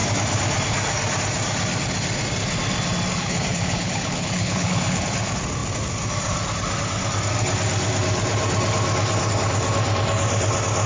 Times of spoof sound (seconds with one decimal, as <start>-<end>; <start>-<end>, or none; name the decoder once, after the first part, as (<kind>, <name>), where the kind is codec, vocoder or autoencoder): 3.1-5.0 (codec, HILCodec)